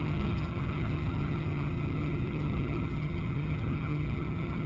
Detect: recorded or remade remade